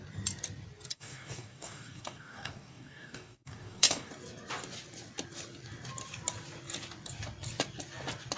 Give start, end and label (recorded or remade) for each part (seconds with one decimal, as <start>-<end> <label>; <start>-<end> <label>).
0.0-0.9 recorded; 0.9-4.1 remade; 4.1-8.4 recorded